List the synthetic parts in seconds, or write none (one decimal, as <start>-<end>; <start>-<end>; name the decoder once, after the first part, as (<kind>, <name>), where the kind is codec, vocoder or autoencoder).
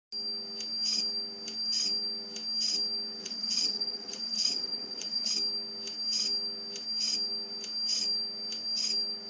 3.2-5.3 (vocoder, Vocos)